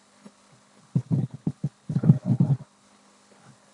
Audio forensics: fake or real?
fake